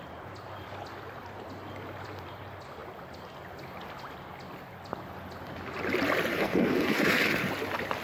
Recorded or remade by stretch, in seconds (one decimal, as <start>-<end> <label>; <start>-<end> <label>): 0.0-6.3 recorded; 6.3-7.4 remade; 7.4-8.0 recorded